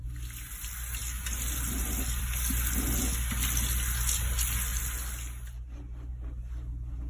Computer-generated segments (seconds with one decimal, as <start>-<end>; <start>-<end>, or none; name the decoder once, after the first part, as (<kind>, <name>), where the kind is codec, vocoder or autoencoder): none